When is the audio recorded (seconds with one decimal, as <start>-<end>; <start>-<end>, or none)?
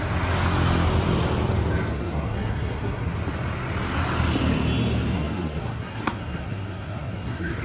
0.0-1.9; 3.1-5.1